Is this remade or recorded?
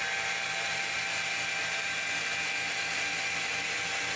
recorded